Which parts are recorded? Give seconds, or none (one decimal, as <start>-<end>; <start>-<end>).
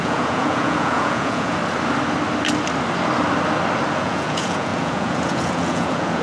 1.6-3.9